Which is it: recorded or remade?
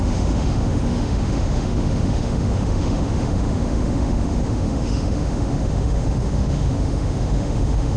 remade